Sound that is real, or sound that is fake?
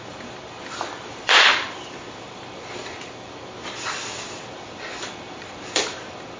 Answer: fake